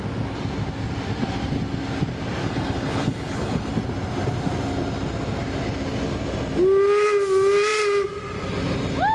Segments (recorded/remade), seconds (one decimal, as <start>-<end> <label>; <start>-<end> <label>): 0.0-2.4 recorded; 2.4-3.7 remade; 3.7-9.1 recorded